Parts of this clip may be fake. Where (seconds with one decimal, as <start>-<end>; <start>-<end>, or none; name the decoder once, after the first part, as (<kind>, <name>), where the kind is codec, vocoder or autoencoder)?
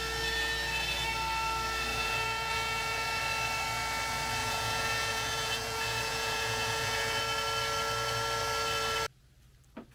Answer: 1.9-3.2 (vocoder, Vocos); 4.4-7.2